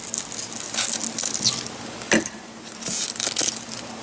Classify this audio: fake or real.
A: real